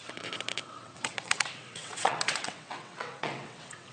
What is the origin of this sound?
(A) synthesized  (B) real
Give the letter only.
A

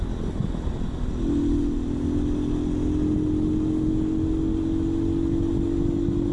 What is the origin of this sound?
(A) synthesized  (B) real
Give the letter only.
B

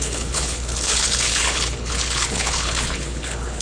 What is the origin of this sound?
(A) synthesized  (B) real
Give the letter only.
A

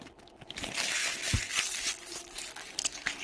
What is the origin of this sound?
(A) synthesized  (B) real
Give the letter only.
B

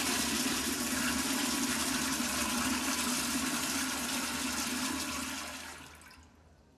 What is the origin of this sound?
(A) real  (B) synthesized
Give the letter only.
A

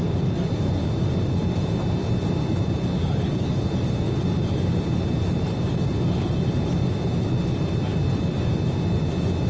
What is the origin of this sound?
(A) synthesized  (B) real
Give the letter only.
B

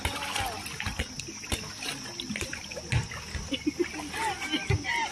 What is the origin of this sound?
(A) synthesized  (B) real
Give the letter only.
B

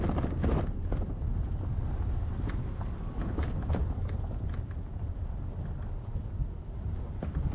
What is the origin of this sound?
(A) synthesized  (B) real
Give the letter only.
B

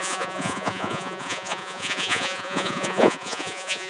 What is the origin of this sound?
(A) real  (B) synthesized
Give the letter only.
B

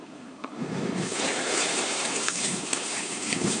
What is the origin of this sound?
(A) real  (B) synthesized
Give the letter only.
B